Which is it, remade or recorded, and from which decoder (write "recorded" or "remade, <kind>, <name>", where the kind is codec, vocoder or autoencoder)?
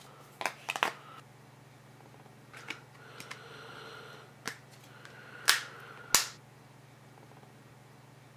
recorded